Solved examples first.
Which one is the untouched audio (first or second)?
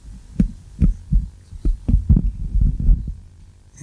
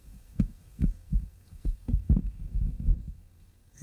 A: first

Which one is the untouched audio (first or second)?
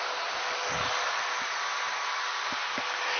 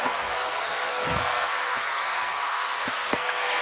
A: first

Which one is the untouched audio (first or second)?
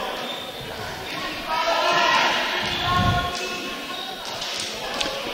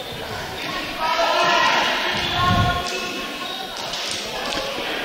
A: first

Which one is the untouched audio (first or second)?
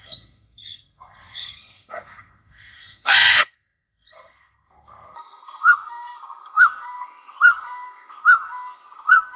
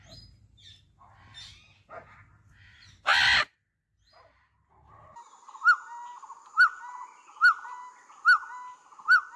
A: second